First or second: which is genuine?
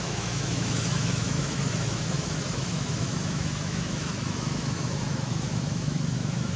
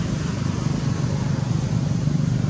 second